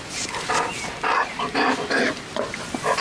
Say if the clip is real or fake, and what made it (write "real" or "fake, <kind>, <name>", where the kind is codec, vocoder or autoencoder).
real